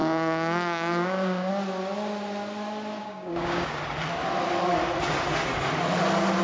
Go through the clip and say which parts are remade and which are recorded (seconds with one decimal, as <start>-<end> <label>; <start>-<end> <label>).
0.0-1.5 remade; 1.5-3.0 recorded; 3.0-3.8 remade; 3.8-6.4 recorded